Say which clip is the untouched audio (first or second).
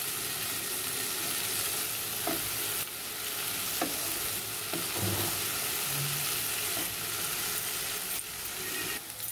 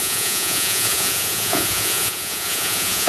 first